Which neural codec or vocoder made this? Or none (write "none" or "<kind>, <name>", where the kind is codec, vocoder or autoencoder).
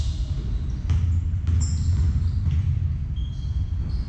none